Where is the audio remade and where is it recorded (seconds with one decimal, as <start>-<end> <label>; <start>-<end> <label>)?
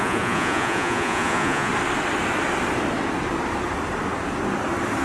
0.0-1.7 remade; 1.7-5.0 recorded